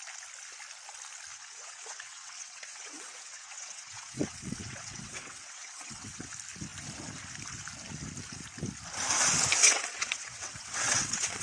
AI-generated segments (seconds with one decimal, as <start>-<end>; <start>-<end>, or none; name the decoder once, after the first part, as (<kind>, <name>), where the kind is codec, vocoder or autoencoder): 1.3-6.3 (vocoder, WaveNeXt); 9.6-11.4